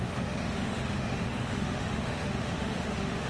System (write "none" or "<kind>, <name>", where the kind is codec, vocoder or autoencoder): autoencoder, DAC-VAE